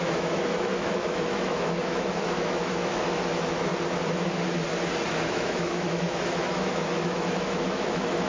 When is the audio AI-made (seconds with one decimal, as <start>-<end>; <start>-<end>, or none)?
0.0-3.7; 5.1-8.3